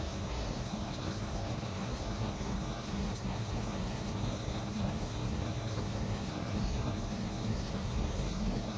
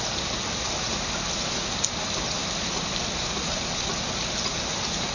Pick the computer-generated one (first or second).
first